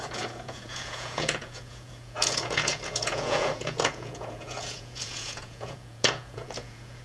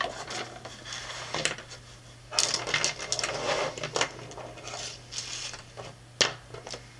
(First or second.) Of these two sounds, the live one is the second